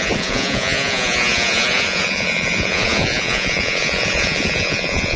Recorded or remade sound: remade